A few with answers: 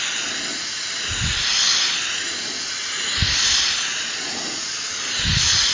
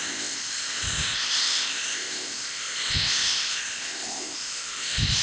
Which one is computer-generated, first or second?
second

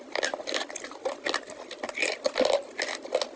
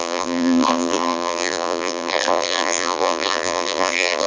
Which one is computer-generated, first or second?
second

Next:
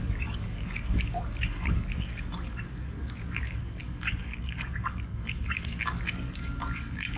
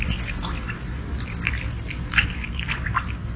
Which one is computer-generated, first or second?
first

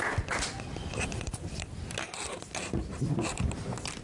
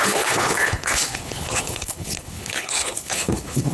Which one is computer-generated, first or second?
second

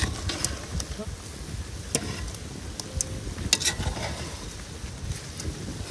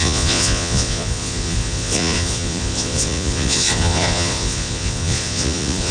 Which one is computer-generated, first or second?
second